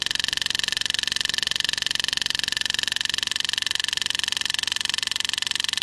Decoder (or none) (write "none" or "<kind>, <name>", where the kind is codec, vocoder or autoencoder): vocoder, BigVGAN v2